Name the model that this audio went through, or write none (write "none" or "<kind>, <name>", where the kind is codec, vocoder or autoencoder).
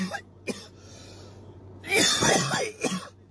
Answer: none